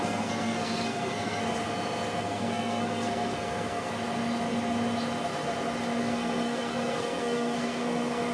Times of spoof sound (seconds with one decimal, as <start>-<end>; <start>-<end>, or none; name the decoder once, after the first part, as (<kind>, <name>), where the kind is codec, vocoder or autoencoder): 0.0-1.4 (codec, SNAC); 2.2-3.9; 6.0-8.3

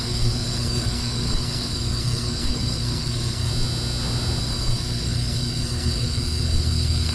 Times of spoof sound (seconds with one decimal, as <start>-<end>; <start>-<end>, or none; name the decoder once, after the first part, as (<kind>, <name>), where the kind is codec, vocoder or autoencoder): 0.0-3.5 (codec, SNAC); 4.4-7.1